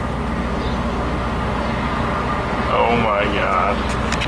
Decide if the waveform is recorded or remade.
recorded